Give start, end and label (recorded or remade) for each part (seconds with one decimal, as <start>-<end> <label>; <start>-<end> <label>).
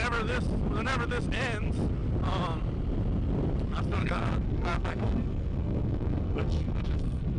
0.0-4.0 recorded; 4.0-7.4 remade